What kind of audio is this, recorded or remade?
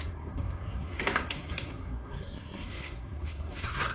remade